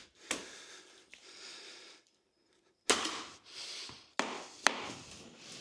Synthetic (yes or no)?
no